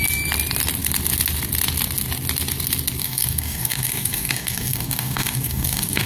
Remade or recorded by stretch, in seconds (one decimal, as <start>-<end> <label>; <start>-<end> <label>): 0.0-3.0 recorded; 3.0-6.1 remade